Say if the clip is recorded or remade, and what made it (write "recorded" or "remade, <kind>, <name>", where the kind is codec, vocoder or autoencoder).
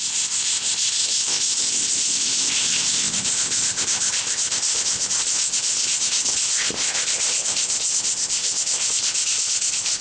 remade, codec, ZipCodec